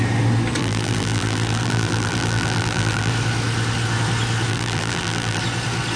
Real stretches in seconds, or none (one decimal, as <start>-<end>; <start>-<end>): 0.0-0.6; 3.1-4.5; 5.4-6.0